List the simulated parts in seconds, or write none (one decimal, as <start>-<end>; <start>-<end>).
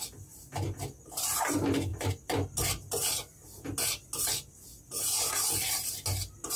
none